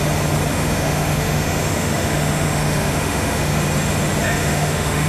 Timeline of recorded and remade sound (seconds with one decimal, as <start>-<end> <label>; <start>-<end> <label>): 0.0-0.5 recorded; 0.5-3.6 remade; 3.6-4.2 recorded; 4.2-5.1 remade